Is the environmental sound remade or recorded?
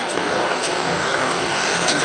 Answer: remade